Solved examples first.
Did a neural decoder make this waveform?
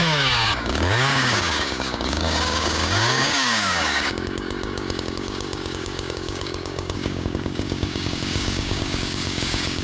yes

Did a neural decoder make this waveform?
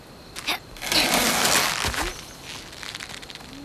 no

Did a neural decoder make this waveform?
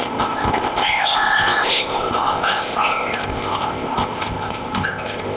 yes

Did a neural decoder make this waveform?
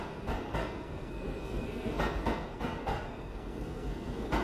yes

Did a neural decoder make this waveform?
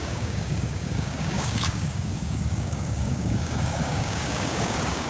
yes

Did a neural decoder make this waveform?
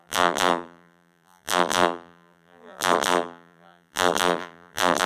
yes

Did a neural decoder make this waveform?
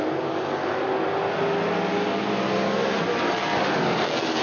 no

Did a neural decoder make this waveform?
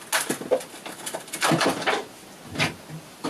no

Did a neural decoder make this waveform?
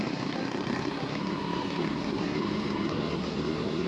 yes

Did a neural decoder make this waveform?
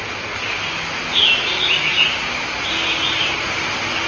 no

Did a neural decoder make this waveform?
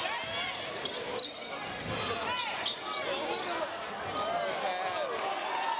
no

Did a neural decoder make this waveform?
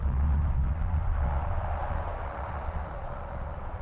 yes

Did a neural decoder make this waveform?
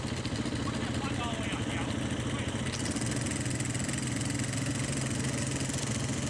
no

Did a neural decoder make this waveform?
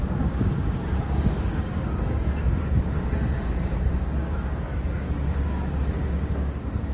yes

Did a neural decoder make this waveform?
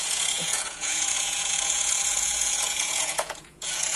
yes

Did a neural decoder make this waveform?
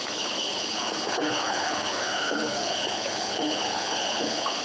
yes